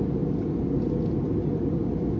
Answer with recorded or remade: recorded